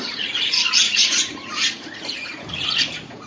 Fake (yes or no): yes